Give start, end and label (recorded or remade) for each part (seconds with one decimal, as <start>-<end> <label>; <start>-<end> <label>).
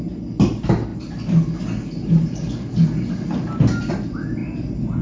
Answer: 0.0-5.0 recorded